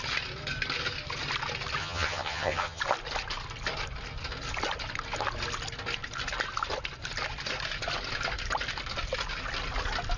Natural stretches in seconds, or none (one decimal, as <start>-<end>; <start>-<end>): 0.0-1.8; 2.8-10.2